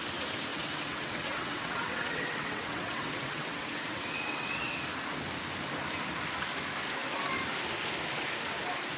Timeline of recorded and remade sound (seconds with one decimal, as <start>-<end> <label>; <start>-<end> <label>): 0.0-0.5 recorded; 0.5-4.7 remade; 4.7-9.0 recorded